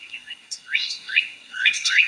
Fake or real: fake